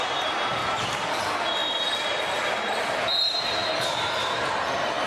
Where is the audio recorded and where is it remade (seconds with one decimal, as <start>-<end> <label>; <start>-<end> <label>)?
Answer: 0.0-0.6 remade; 0.6-1.1 recorded; 1.1-3.6 remade; 3.6-5.1 recorded